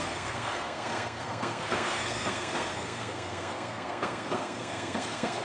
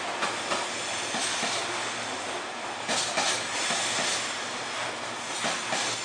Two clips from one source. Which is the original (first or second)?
second